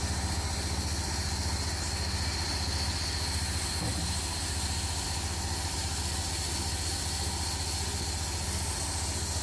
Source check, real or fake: real